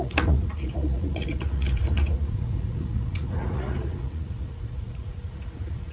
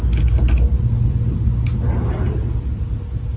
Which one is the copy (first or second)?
first